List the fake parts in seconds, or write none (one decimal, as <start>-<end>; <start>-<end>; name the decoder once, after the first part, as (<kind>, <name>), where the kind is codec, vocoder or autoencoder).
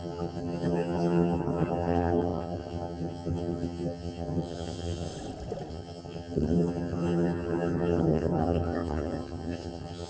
0.0-5.1 (vocoder, HiFi-GAN); 5.7-10.1